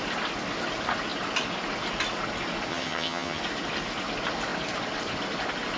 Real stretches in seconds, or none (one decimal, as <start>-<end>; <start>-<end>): 0.0-2.7; 3.4-5.8